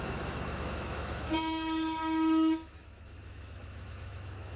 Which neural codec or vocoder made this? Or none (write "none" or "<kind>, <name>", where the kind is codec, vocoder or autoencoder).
autoencoder, DAC-VAE